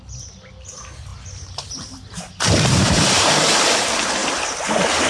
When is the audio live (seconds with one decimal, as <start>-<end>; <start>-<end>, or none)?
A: 0.0-1.1; 3.3-4.2